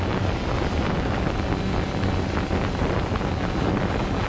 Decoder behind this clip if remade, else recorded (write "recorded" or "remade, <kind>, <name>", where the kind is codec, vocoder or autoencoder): recorded